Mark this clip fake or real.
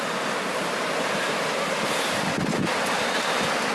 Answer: real